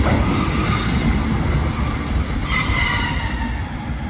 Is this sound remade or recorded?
recorded